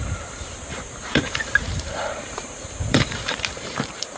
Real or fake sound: fake